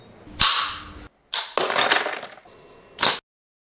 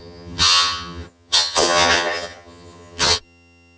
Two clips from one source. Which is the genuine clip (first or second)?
first